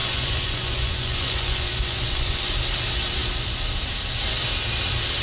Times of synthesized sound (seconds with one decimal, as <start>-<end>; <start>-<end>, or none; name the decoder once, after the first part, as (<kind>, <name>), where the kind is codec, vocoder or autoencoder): 0.0-2.4 (vocoder, Vocos)